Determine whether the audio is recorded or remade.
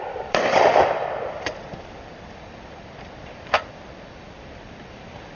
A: remade